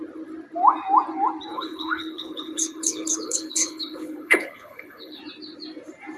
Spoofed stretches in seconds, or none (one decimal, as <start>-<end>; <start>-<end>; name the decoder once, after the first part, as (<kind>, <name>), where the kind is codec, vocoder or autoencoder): 1.5-5.2 (codec, HILCodec)